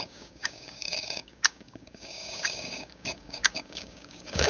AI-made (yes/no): yes